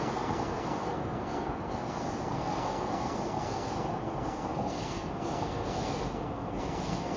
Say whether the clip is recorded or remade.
remade